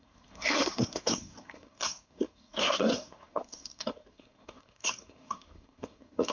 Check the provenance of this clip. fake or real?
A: fake